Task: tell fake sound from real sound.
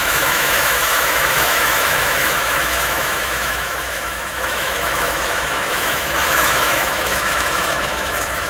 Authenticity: fake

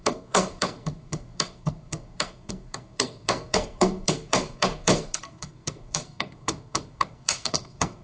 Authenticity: fake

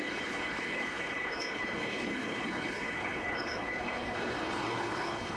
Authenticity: fake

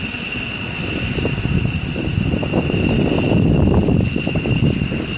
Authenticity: real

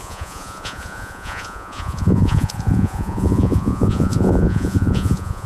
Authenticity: fake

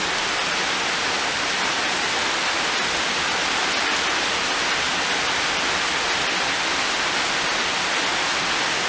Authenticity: real